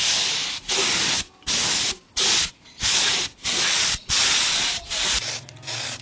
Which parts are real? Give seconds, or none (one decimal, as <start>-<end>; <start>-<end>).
0.0-2.3; 5.0-6.0